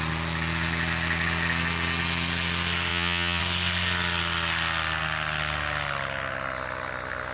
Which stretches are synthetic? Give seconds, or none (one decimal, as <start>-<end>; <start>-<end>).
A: 2.9-3.4